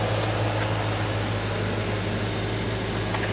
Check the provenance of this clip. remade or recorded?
recorded